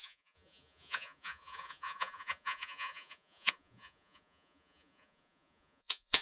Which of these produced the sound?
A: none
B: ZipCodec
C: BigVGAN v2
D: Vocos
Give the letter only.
D